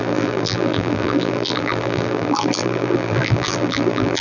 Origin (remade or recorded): remade